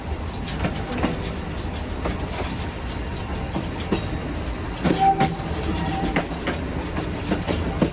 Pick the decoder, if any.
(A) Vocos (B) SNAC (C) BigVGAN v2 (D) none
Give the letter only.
D